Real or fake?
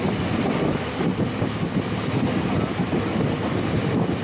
real